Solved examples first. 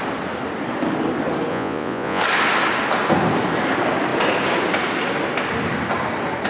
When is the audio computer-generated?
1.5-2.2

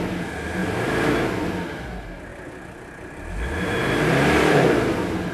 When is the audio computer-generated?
none

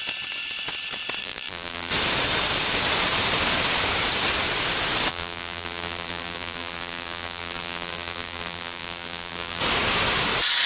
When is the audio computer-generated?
1.2-1.9; 5.1-9.6

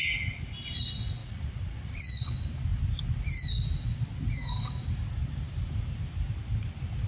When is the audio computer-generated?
1.2-2.3

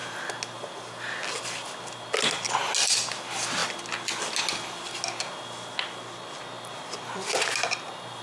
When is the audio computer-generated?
none

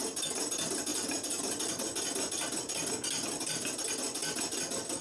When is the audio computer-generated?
none

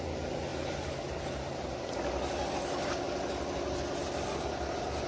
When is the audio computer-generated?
none